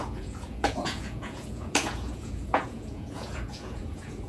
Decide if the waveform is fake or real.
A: fake